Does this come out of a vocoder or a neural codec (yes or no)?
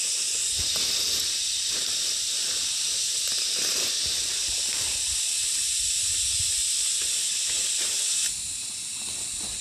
no